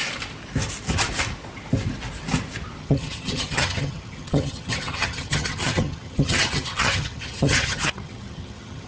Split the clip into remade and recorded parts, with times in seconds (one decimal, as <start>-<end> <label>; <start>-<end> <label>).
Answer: 0.0-2.8 recorded; 2.8-8.9 remade